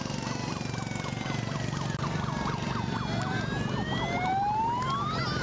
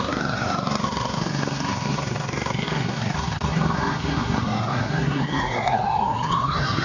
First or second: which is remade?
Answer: second